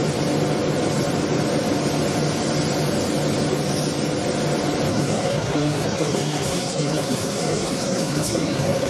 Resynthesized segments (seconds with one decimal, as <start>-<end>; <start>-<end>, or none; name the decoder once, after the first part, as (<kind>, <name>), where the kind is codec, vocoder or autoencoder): 4.9-8.9 (codec, SNAC)